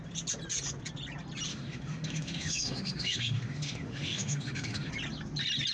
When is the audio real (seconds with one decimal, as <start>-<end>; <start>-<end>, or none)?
0.0-1.5; 4.9-5.7